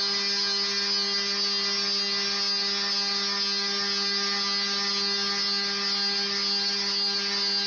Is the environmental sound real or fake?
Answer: real